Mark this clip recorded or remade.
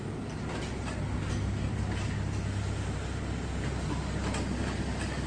recorded